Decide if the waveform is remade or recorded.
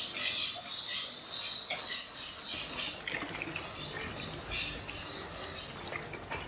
recorded